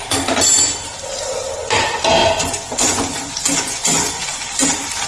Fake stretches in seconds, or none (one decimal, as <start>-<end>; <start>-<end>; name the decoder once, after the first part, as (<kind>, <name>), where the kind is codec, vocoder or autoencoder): 2.2-4.4 (vocoder, Vocos)